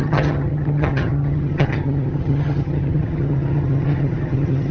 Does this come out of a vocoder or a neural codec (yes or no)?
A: yes